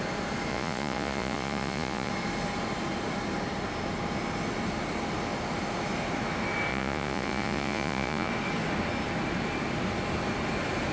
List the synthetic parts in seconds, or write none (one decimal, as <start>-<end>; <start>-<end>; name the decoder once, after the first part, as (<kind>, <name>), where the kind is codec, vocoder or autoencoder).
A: 0.5-2.1 (vocoder, Vocos); 6.7-8.3